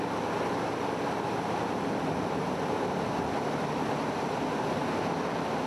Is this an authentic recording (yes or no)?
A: yes